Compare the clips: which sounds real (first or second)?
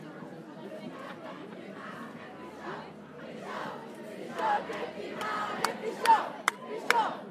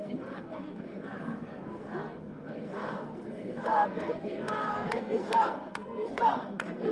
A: first